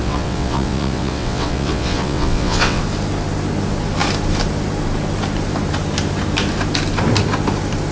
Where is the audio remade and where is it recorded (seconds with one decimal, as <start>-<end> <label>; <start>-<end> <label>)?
0.0-2.8 remade; 2.8-7.9 recorded